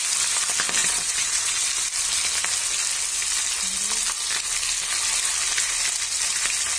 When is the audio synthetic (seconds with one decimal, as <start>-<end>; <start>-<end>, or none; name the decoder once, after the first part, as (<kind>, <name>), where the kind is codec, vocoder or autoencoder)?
0.8-1.6 (vocoder, WaveNeXt)